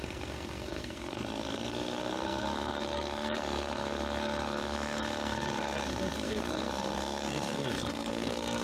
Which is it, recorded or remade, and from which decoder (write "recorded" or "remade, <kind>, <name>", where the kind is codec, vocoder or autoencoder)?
remade, codec, SNAC